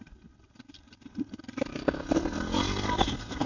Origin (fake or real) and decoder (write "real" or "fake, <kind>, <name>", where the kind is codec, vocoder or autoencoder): real